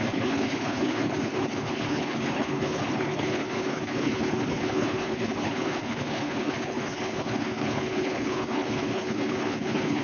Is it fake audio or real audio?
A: fake